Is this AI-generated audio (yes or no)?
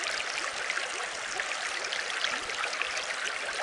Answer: no